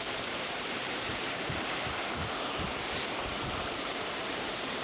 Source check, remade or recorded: remade